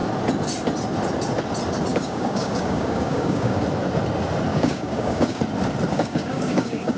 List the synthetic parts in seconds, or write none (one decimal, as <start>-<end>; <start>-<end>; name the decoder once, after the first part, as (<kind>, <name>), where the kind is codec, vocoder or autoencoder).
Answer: 1.9-3.6 (codec, DAC); 4.5-5.4; 5.9-7.0